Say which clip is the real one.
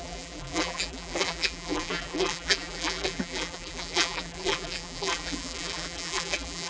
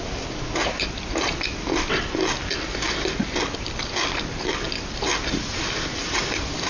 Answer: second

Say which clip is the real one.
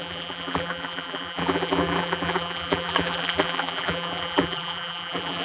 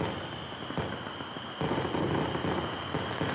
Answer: second